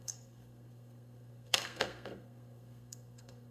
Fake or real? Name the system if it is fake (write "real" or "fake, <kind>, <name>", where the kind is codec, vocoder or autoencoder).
fake, codec, SNAC